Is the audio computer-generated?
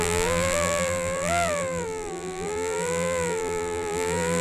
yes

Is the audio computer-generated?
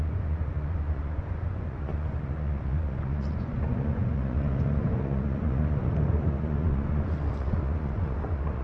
yes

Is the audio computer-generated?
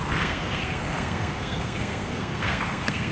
yes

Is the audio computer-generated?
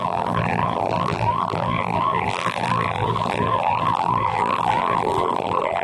yes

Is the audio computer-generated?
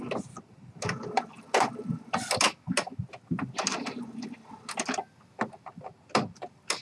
no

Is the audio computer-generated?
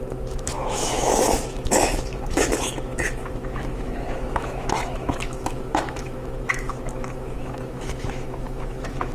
yes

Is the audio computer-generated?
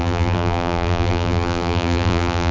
yes